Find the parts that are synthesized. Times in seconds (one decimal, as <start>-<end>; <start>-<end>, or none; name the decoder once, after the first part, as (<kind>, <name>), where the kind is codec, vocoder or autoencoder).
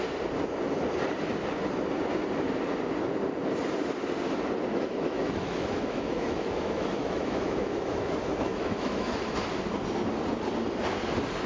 4.7-9.2 (autoencoder, DAC-VAE)